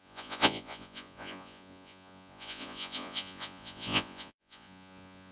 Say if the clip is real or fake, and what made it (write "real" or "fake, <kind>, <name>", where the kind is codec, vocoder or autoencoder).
fake, vocoder, Vocos